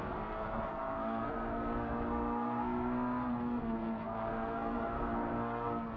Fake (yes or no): yes